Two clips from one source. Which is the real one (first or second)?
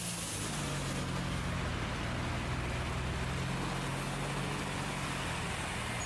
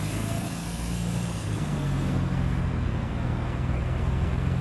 first